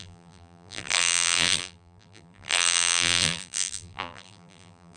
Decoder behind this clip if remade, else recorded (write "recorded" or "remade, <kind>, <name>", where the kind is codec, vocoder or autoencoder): remade, vocoder, BigVGAN v2